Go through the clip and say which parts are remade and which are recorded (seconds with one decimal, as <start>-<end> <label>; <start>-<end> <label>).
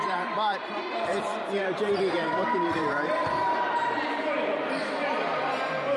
0.0-4.2 remade; 4.2-5.4 recorded; 5.4-6.0 remade